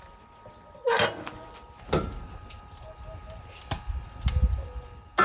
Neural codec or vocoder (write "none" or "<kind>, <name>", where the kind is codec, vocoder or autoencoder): none